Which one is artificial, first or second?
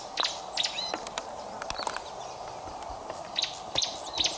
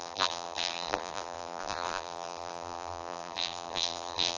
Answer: second